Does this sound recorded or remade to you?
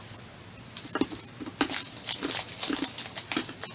recorded